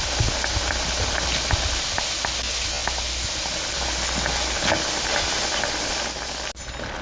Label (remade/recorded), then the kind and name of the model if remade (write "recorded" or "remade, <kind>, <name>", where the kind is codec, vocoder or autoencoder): recorded